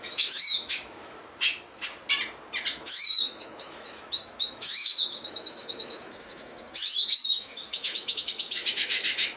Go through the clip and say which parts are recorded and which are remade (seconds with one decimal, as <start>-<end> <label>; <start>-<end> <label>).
0.0-1.2 remade; 1.2-2.7 recorded; 2.7-9.4 remade

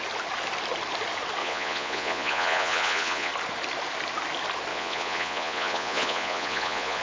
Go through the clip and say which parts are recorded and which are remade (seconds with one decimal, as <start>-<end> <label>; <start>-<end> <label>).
0.0-1.4 recorded; 1.4-3.3 remade; 3.3-4.7 recorded; 4.7-7.0 remade